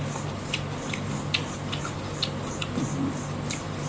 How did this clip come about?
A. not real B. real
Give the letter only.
B